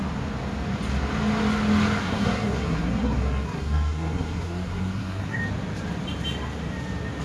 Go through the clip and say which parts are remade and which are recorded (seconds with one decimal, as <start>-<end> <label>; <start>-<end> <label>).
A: 0.0-2.0 recorded; 2.0-5.4 remade; 5.4-7.2 recorded

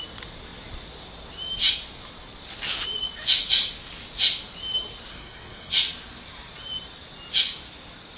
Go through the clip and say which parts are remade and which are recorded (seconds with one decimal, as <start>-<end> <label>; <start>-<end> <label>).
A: 0.0-5.1 recorded; 5.1-5.7 remade; 5.7-8.2 recorded

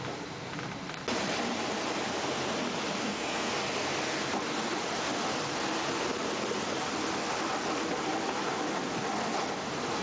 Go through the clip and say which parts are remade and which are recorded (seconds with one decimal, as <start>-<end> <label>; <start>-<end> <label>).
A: 0.0-3.0 recorded; 3.0-3.6 remade; 3.6-10.0 recorded

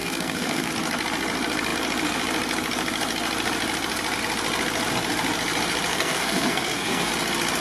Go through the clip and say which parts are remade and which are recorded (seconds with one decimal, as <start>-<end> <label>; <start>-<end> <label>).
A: 0.0-0.7 remade; 0.7-5.9 recorded; 5.9-7.1 remade; 7.1-7.6 recorded

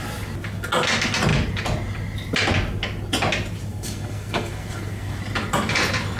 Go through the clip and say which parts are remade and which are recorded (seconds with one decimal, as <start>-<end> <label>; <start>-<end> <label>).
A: 0.0-3.7 recorded; 3.7-5.2 remade; 5.2-6.2 recorded